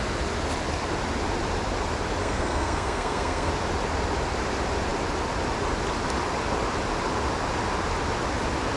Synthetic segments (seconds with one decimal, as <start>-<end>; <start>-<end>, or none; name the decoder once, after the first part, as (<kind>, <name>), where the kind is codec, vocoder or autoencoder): 2.2-3.5 (codec, SNAC)